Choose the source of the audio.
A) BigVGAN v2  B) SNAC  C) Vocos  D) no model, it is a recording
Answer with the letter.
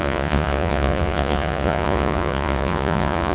C